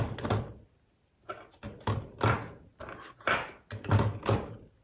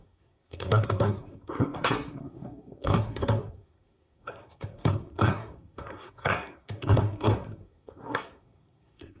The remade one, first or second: second